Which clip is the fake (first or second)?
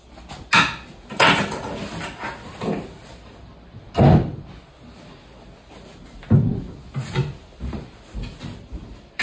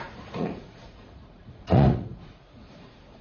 second